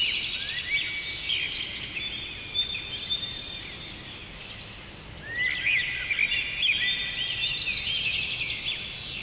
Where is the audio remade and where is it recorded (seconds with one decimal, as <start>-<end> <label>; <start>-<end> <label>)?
0.0-9.2 recorded